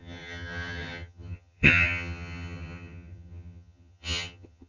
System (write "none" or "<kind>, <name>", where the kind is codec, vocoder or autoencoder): vocoder, HiFi-GAN